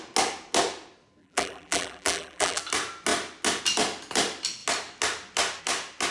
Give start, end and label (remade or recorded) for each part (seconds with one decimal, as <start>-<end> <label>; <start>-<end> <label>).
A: 0.0-1.2 recorded; 1.2-2.6 remade; 2.6-6.1 recorded